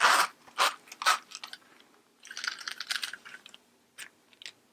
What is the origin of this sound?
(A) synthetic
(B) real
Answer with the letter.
B